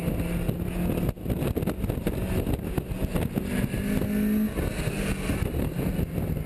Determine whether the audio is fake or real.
real